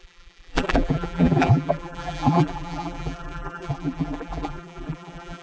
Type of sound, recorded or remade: remade